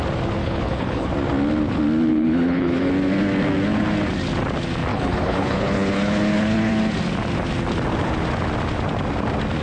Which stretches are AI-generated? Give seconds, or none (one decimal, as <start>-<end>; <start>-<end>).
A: 0.4-1.1; 2.1-2.9; 4.9-6.7